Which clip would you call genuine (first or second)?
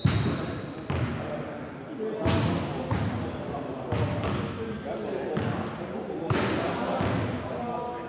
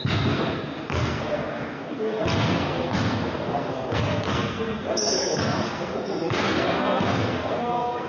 first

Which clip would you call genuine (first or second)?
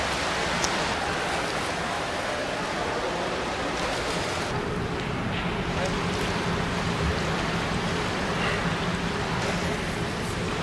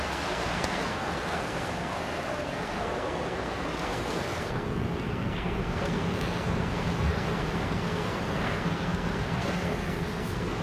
first